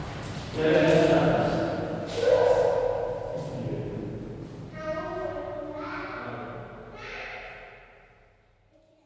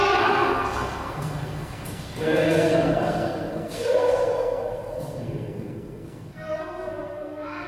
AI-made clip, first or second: second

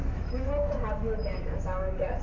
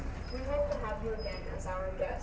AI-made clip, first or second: first